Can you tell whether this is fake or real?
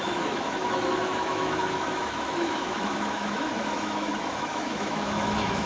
fake